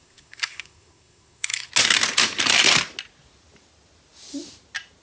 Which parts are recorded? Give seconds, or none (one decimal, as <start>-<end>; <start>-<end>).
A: 1.7-5.0